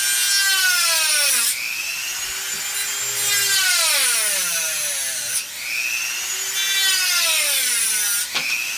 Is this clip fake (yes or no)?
no